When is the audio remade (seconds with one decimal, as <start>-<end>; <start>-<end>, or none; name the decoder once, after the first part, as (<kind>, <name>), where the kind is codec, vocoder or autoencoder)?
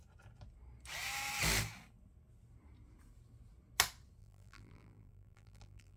4.2-6.0 (vocoder, BigVGAN v2)